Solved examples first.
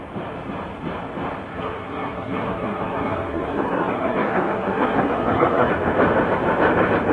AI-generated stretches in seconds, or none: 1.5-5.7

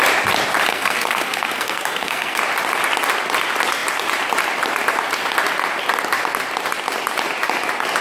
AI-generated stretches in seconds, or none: 0.7-2.4

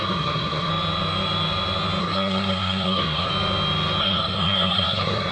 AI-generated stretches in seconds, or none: 0.0-0.7; 2.0-3.3; 4.0-5.3

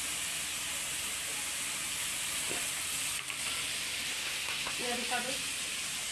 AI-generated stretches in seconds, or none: 4.1-4.7

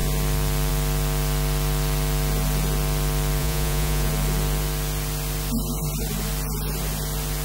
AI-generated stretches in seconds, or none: 3.4-4.1

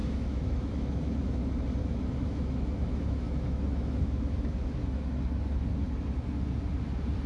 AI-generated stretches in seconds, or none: 0.0-1.4; 1.8-4.8